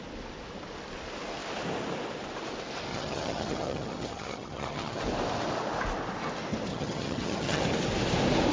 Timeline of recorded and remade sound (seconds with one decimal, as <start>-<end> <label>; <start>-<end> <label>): 0.0-2.9 recorded; 2.9-5.0 remade; 5.0-6.7 recorded; 6.7-7.6 remade; 7.6-8.5 recorded